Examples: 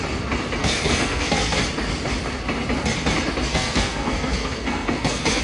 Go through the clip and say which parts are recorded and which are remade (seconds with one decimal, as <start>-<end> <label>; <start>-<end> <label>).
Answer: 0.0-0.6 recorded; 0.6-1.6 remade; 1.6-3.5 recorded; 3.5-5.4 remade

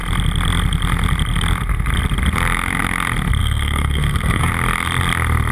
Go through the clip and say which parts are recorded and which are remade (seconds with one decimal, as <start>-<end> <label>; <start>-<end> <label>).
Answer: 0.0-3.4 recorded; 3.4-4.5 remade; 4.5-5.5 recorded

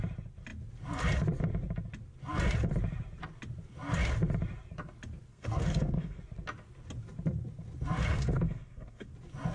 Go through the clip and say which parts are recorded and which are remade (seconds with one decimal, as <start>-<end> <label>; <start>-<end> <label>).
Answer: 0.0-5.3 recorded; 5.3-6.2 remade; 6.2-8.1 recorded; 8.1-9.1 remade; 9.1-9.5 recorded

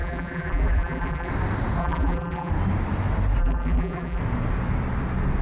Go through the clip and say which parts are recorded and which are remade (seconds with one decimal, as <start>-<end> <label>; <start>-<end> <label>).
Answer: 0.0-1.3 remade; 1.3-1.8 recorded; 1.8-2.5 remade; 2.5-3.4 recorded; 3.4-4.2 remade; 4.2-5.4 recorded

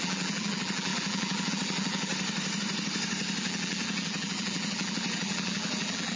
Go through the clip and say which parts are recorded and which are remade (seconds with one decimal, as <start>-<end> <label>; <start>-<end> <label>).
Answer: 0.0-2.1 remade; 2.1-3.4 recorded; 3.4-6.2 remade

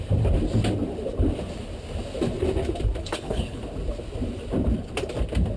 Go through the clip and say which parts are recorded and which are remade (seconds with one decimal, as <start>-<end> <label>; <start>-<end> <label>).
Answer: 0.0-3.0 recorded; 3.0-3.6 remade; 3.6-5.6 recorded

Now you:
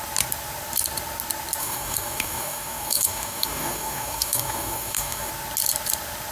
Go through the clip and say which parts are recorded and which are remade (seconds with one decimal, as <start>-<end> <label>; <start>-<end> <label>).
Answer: 0.0-1.6 recorded; 1.6-5.3 remade; 5.3-6.3 recorded

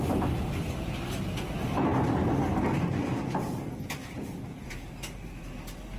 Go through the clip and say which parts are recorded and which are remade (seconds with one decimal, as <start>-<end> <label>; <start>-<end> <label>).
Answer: 0.0-6.0 recorded